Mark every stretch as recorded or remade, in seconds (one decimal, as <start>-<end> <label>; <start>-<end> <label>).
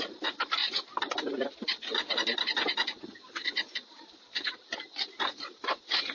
0.0-6.1 recorded